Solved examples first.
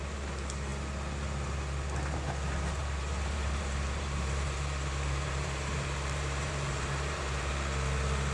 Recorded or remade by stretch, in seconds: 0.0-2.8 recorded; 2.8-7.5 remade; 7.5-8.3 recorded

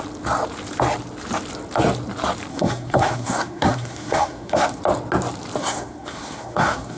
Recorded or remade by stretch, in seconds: 0.0-2.5 recorded; 2.5-4.8 remade; 4.8-5.6 recorded; 5.6-7.0 remade

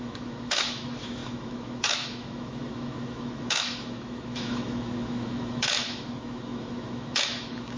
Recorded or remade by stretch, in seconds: 0.0-7.8 remade

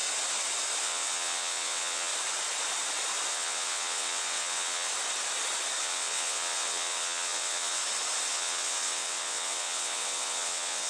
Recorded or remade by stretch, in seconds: 0.0-0.8 recorded; 0.8-2.1 remade; 2.1-3.3 recorded; 3.3-4.9 remade; 4.9-5.8 recorded; 5.8-7.8 remade; 7.8-8.3 recorded; 8.3-10.9 remade

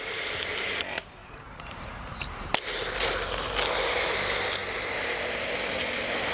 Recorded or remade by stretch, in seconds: 0.0-1.2 recorded; 1.2-2.5 remade; 2.5-6.3 recorded

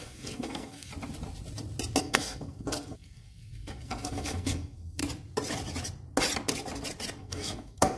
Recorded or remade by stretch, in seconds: 0.0-0.9 remade; 0.9-2.0 recorded; 2.0-5.0 remade; 5.0-7.2 recorded; 7.2-8.0 remade

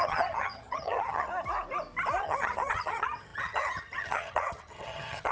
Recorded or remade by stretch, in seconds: 0.0-1.3 remade; 1.3-2.2 recorded; 2.2-5.3 remade

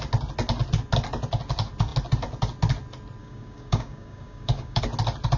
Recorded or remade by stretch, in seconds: 0.0-3.2 recorded; 3.2-4.8 remade; 4.8-5.4 recorded